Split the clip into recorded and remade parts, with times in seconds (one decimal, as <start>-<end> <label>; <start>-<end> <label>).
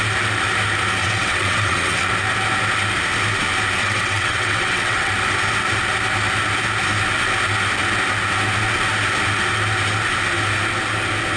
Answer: 0.0-1.0 recorded; 1.0-2.1 remade; 2.1-3.8 recorded; 3.8-5.1 remade; 5.1-11.4 recorded